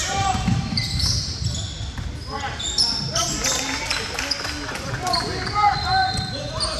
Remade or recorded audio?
recorded